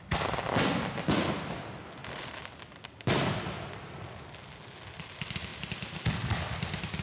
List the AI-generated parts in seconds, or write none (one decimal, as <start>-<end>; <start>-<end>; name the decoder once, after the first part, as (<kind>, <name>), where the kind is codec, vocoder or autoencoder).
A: 2.0-2.8 (vocoder, BigVGAN v2)